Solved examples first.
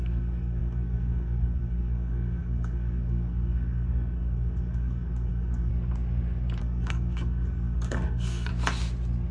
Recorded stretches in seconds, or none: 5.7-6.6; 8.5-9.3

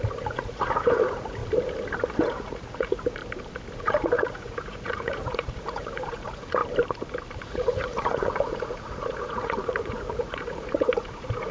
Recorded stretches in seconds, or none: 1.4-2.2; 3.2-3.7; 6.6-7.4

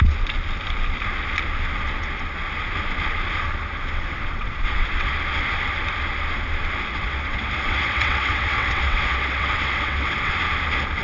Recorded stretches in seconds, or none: 0.0-3.8; 5.1-6.9; 10.3-11.0